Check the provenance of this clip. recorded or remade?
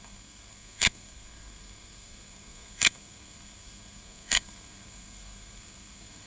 remade